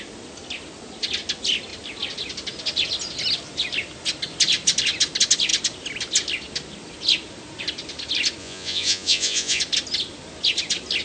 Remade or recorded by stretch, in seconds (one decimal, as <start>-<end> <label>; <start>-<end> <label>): 0.0-8.4 recorded; 8.4-9.6 remade; 9.6-11.0 recorded